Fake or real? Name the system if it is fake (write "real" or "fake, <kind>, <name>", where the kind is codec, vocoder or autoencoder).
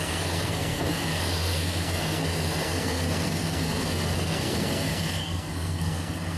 fake, codec, SNAC